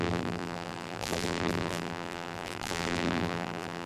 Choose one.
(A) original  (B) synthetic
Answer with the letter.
B